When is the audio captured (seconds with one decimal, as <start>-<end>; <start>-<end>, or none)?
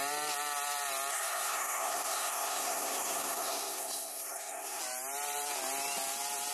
0.0-1.1; 4.8-6.5